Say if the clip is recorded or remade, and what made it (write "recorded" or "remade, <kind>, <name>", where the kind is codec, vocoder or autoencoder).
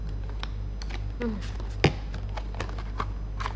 recorded